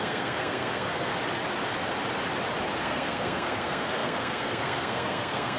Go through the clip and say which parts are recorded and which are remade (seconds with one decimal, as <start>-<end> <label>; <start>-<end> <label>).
0.0-1.1 remade; 1.1-2.8 recorded; 2.8-5.6 remade